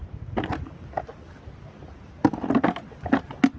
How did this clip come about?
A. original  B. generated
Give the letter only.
A